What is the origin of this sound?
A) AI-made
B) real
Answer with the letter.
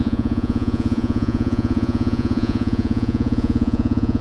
A